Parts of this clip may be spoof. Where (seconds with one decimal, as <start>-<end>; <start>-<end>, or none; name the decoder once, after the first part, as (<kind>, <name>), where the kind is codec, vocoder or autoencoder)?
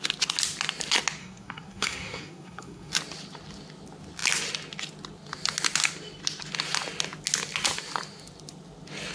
1.2-2.9 (codec, SNAC)